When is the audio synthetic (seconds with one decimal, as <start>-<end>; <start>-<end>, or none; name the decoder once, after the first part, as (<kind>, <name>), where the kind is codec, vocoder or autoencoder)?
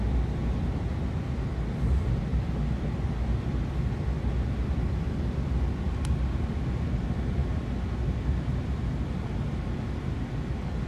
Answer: none